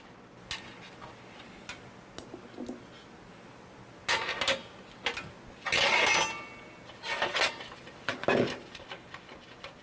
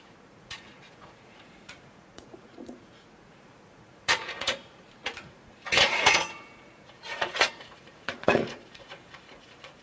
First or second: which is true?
first